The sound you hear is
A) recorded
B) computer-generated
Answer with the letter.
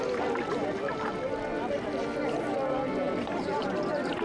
A